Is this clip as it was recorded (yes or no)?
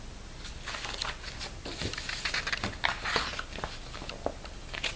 yes